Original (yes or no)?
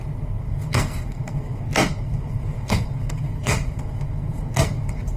no